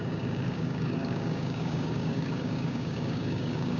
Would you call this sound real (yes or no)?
no